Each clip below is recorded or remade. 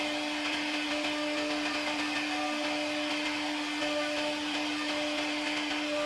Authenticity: recorded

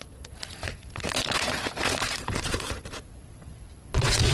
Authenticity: remade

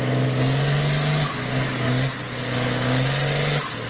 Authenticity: recorded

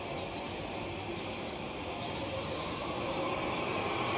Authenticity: recorded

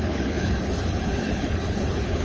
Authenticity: remade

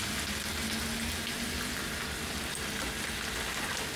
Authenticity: recorded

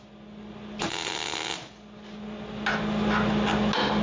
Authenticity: recorded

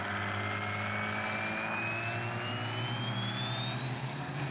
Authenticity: recorded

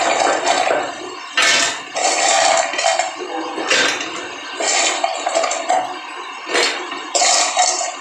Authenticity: recorded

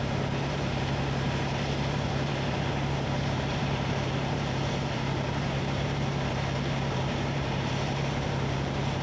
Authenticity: remade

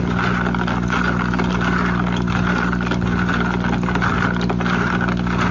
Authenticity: recorded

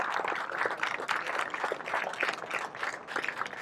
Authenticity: recorded